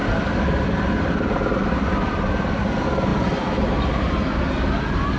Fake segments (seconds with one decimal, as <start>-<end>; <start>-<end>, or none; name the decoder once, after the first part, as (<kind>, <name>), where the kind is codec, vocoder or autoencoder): 0.0-2.7 (vocoder, BigVGAN v2)

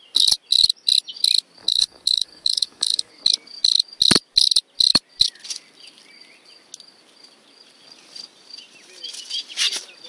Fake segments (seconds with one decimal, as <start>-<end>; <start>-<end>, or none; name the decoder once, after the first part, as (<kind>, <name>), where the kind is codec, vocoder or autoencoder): 1.6-3.1 (codec, DAC)

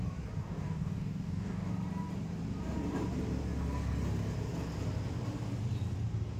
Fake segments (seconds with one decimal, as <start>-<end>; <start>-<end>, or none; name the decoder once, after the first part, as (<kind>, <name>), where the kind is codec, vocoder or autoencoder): 0.4-1.7 (codec, DAC)